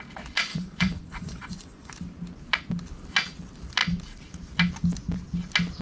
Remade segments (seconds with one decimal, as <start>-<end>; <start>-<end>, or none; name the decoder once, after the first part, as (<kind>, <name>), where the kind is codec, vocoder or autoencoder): 0.5-1.9 (vocoder, Vocos)